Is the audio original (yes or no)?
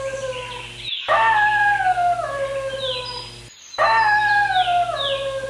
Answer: yes